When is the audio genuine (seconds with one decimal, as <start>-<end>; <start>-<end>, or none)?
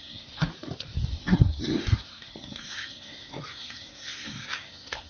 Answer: 0.5-1.1